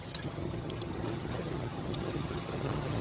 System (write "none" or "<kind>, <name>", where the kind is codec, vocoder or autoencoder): vocoder, HiFi-GAN